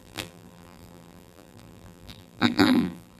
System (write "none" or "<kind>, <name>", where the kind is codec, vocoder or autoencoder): vocoder, BigVGAN v2